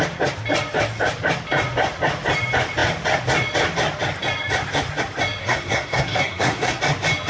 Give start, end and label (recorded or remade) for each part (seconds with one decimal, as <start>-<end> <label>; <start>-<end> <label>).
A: 0.0-5.4 recorded; 5.4-6.8 remade; 6.8-7.3 recorded